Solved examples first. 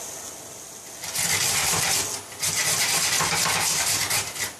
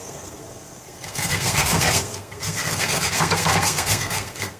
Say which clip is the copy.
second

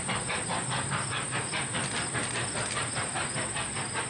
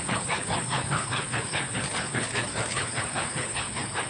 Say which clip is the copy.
second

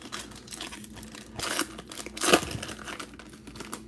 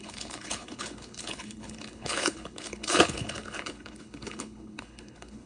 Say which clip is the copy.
second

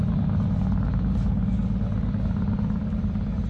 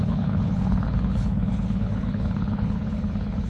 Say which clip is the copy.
second